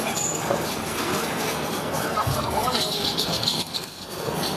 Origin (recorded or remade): remade